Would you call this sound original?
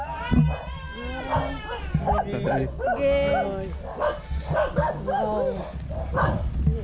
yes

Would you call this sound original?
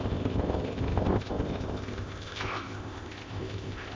no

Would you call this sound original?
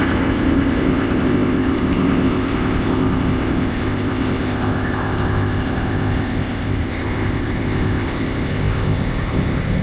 no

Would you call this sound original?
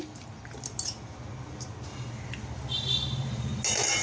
yes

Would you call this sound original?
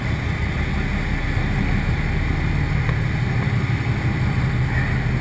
yes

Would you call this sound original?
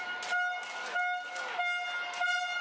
yes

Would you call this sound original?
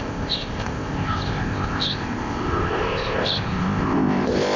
no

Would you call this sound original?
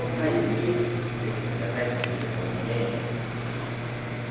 yes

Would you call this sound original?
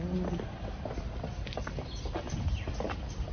yes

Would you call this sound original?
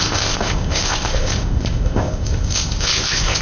no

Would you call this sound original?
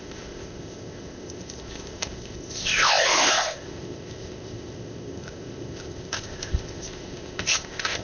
no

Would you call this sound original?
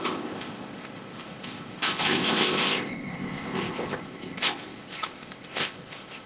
no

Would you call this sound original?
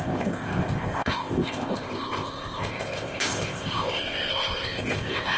no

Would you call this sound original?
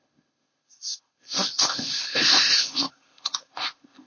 no